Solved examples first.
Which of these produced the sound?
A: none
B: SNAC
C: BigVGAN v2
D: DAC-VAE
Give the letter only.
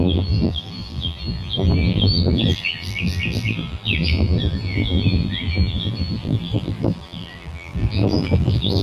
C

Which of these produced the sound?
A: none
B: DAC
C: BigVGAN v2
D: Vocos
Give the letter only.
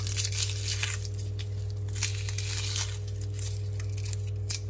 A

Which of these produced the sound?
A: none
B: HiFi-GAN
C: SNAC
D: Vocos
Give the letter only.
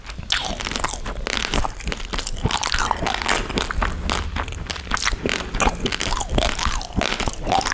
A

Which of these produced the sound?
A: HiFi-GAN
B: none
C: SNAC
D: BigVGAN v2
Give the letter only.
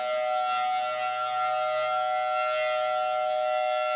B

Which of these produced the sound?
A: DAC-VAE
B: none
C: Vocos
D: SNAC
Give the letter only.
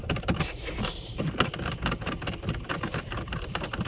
B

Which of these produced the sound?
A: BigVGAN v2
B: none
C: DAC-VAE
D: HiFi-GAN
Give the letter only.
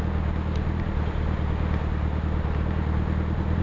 B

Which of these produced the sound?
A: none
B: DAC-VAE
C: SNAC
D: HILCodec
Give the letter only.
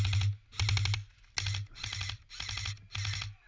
A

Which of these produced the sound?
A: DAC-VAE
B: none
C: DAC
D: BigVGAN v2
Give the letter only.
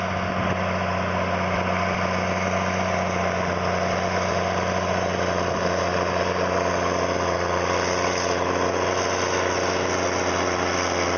B